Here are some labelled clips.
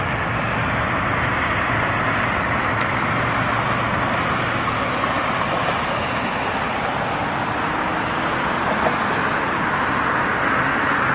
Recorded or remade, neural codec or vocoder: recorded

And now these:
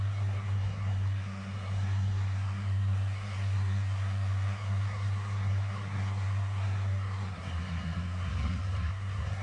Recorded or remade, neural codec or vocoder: remade, codec, SNAC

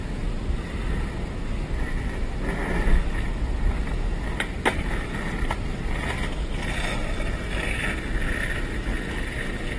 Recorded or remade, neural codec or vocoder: recorded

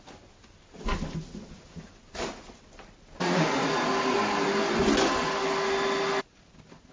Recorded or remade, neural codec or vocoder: recorded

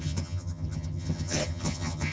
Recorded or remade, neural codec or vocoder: remade, vocoder, HiFi-GAN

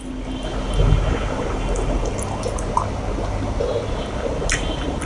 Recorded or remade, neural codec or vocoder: recorded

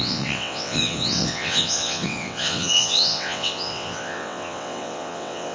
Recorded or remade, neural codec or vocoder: remade, vocoder, WaveNeXt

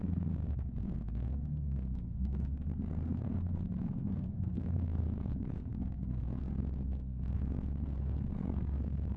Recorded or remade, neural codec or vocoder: remade, codec, SNAC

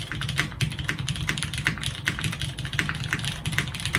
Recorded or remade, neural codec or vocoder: remade, vocoder, BigVGAN v2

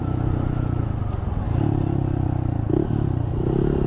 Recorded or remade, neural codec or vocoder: recorded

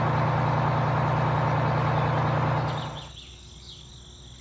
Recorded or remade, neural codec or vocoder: recorded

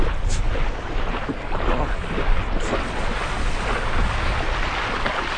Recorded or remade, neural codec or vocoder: recorded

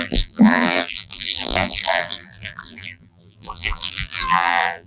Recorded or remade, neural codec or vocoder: remade, vocoder, BigVGAN v2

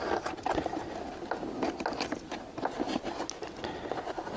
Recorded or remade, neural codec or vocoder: recorded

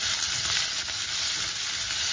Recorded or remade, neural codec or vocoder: recorded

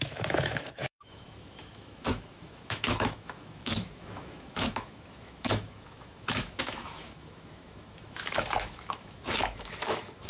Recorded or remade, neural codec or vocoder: remade, autoencoder, DAC-VAE